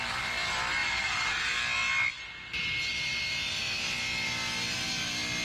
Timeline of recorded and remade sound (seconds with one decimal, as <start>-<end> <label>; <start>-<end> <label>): 0.0-0.8 recorded; 0.8-1.3 remade; 1.3-5.4 recorded